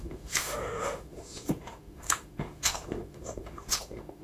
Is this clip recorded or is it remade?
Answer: remade